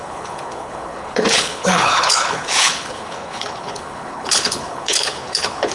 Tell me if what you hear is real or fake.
fake